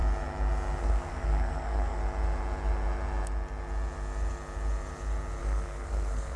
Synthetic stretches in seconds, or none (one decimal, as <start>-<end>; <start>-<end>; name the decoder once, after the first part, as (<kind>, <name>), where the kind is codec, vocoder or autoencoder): 0.8-2.0 (codec, SNAC); 5.4-6.4